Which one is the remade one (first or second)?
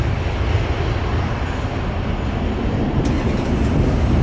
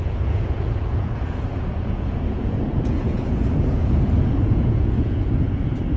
second